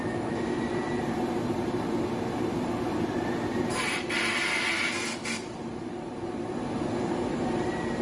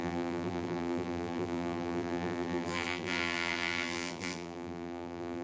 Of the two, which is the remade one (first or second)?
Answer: second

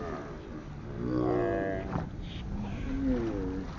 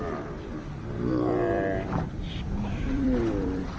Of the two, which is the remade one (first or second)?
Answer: second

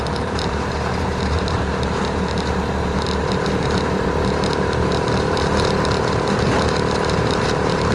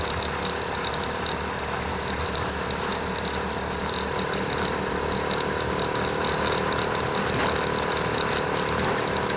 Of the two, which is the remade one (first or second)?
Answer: first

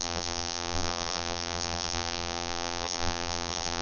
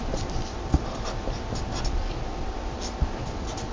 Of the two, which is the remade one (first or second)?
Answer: first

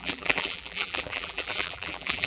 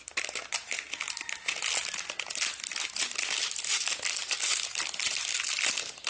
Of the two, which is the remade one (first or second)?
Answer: first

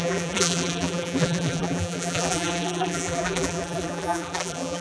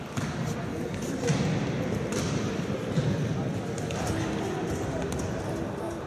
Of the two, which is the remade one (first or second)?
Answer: first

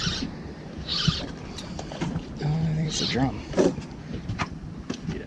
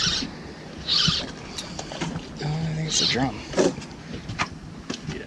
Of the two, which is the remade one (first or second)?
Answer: first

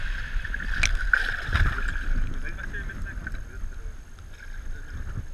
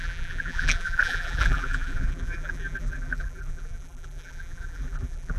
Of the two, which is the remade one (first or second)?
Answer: second